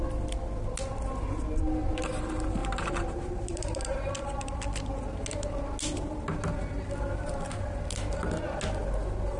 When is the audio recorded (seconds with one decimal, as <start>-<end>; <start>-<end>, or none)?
0.0-2.6; 4.1-9.4